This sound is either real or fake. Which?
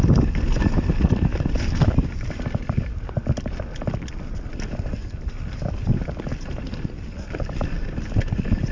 real